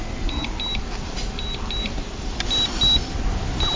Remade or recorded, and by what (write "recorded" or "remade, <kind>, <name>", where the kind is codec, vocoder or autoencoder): recorded